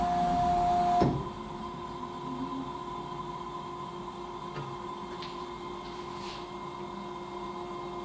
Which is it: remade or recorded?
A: recorded